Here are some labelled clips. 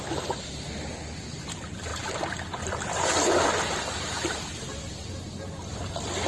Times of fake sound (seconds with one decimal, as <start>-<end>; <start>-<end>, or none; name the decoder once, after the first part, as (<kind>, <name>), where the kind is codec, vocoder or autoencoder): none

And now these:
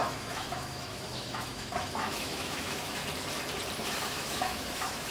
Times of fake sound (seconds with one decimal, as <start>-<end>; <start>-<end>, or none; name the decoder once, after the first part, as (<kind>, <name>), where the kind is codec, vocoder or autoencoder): 0.0-3.0 (autoencoder, DAC-VAE); 3.8-5.1

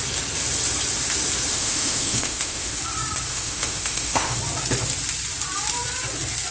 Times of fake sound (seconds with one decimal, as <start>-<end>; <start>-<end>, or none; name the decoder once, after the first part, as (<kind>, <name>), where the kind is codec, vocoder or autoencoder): 1.5-2.8 (autoencoder, DAC-VAE); 3.3-4.4

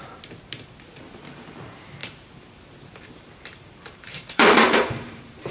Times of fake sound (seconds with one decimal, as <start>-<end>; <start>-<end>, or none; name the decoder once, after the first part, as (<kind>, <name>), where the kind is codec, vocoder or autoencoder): 2.0-5.5 (vocoder, BigVGAN v2)

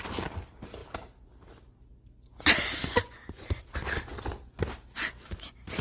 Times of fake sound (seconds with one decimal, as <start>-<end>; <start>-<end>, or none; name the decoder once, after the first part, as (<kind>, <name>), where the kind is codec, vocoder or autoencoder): 2.8-3.6 (vocoder, Vocos)

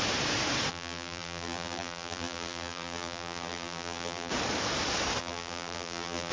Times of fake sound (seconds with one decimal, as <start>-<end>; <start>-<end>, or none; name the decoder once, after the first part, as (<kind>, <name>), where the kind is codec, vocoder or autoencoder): 0.7-4.3 (vocoder, BigVGAN v2); 5.2-6.3